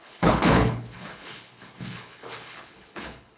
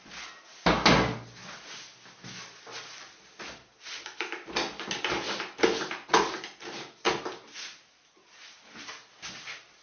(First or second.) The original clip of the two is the second